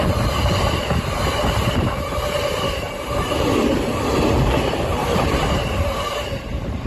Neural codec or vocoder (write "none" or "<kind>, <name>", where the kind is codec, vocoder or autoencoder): vocoder, BigVGAN v2